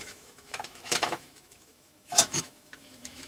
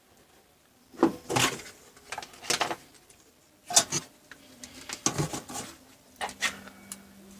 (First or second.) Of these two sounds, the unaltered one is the second